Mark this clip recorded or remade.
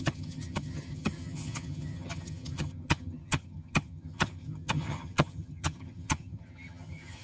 remade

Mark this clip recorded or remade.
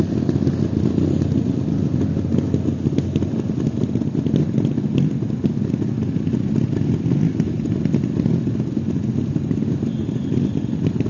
recorded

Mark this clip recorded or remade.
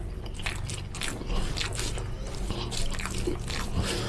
recorded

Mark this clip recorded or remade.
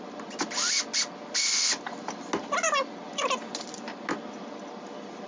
recorded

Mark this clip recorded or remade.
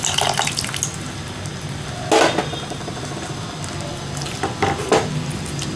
recorded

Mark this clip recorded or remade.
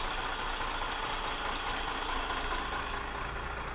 recorded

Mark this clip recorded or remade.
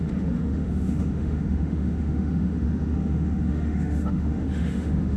remade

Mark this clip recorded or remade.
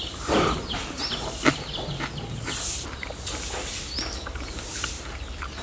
recorded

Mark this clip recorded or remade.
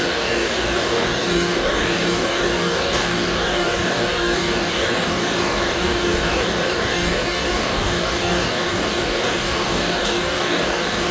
remade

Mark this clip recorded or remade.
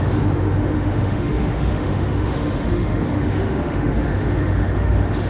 remade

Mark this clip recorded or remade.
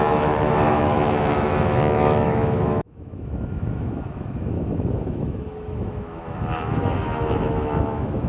remade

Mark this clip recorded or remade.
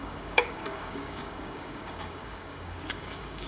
remade